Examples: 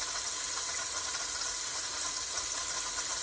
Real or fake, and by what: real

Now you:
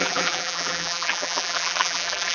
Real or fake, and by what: fake, vocoder, BigVGAN v2